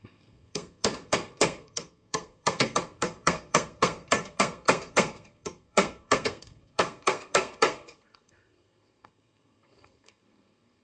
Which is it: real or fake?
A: fake